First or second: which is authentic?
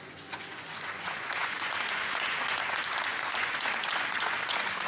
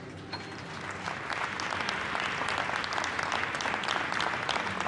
second